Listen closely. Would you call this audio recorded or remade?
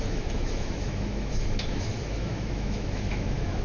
remade